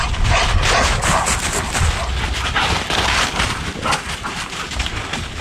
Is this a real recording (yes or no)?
yes